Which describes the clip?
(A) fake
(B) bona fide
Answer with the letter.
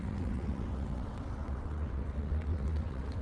A